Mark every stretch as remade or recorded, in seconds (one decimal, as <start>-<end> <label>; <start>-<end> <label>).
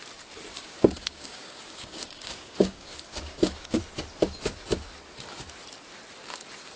0.0-0.5 recorded; 0.5-3.8 remade; 3.8-6.8 recorded